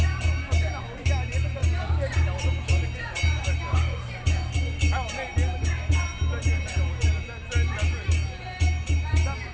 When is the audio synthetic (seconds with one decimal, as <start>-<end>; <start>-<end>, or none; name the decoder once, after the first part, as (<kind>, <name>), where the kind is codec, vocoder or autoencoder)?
none